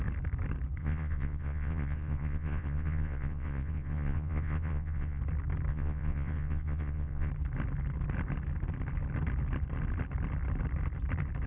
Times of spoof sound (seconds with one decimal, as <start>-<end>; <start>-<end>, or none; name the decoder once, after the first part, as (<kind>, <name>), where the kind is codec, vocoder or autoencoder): 0.8-5.2 (vocoder, Vocos); 5.7-7.3